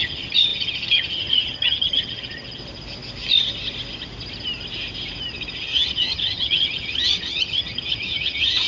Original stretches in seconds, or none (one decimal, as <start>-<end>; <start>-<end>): 2.6-5.6